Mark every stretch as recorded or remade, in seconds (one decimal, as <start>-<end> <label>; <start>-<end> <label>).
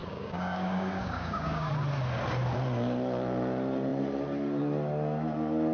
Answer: 0.0-1.7 remade; 1.7-5.7 recorded